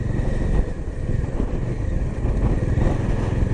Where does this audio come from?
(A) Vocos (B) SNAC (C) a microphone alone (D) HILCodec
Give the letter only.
C